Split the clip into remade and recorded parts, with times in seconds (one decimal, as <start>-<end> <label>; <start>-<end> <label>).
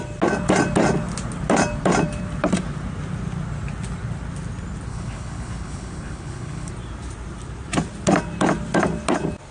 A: 0.0-4.9 recorded; 4.9-6.7 remade; 6.7-9.5 recorded